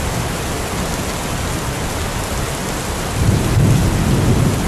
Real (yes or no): yes